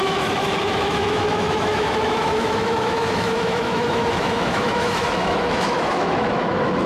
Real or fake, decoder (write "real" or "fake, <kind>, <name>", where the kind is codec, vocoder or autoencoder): fake, autoencoder, DAC-VAE